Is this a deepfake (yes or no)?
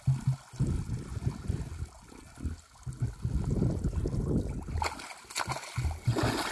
no